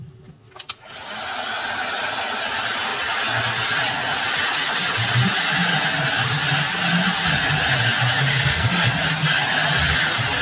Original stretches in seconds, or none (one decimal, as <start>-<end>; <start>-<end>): 0.0-8.3; 8.9-10.4